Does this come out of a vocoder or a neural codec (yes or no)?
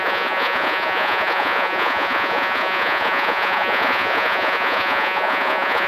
yes